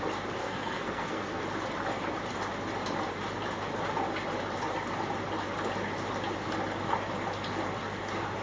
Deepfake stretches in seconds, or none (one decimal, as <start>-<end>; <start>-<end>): 0.4-1.4